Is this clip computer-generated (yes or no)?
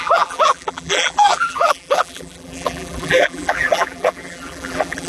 yes